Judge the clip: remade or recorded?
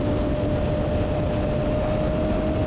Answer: recorded